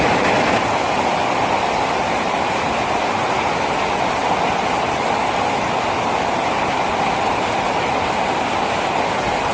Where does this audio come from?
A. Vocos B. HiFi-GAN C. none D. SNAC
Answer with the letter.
C